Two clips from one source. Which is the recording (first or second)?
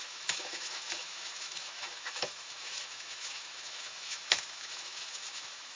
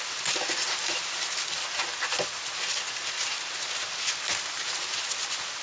second